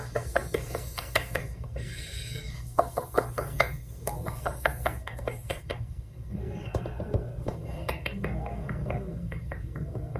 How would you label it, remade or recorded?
remade